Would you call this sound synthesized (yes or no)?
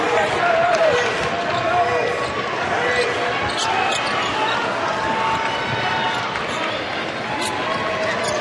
no